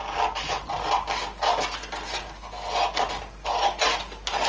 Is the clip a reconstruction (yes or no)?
no